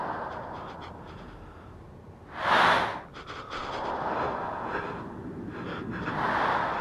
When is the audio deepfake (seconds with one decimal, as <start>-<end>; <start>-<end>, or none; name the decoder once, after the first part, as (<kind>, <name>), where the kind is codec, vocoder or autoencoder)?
none